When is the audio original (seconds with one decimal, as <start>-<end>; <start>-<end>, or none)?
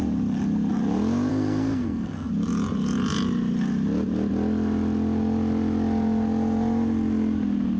0.0-1.3; 2.3-7.8